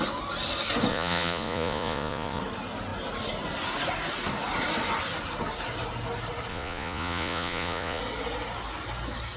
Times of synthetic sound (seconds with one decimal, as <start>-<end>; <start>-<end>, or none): 0.9-2.4; 6.5-8.0